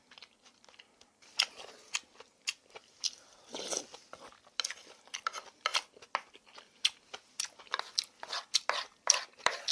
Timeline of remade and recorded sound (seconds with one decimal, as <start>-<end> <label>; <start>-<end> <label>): 0.0-9.7 recorded